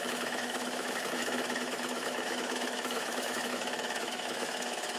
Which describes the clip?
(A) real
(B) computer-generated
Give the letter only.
B